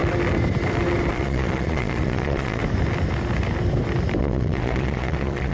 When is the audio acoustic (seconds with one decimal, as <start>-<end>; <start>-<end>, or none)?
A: 0.0-1.1; 2.6-4.2